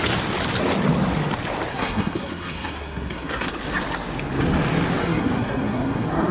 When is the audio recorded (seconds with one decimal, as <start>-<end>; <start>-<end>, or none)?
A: 0.0-1.7; 3.5-5.0